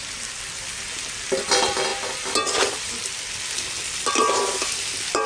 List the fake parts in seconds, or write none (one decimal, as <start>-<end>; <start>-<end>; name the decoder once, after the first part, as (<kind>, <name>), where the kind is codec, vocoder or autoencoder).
none